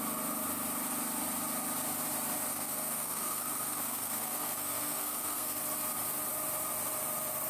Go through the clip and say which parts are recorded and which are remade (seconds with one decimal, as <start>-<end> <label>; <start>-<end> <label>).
0.0-2.5 recorded; 2.5-5.6 remade; 5.6-7.5 recorded